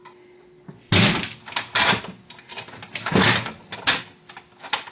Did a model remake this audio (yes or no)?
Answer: no